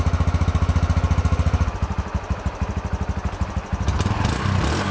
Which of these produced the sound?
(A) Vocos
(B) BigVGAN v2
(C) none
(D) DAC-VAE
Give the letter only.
C